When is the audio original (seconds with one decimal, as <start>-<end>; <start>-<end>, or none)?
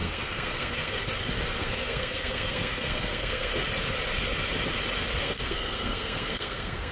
1.0-1.6; 3.5-5.2